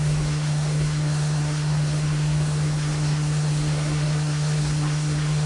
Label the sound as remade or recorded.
remade